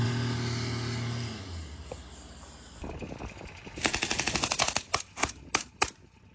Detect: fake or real real